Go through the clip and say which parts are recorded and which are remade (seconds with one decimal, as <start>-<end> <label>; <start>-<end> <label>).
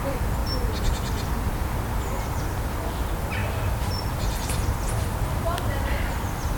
0.0-0.4 remade; 0.4-2.2 recorded; 2.2-6.6 remade